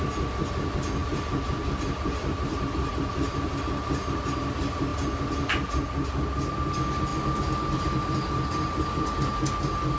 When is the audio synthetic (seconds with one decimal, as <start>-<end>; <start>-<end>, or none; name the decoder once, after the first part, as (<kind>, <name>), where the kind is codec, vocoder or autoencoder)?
none

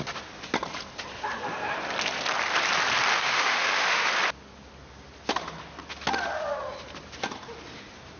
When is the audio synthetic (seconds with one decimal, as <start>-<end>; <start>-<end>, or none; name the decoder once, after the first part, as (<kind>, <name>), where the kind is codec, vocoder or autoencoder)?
3.1-4.1 (autoencoder, DAC-VAE)

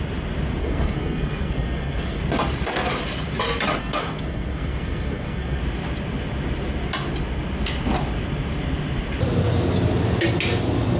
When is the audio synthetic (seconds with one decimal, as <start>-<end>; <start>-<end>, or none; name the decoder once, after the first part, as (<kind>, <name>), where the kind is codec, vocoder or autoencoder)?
0.6-2.2 (codec, SNAC); 3.8-5.6

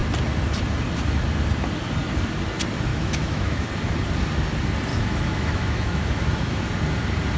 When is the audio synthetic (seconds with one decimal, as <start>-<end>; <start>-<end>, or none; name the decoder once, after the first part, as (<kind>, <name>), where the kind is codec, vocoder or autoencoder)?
2.9-3.7 (autoencoder, DAC-VAE); 4.9-6.6